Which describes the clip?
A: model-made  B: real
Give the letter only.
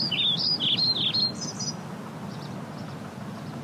B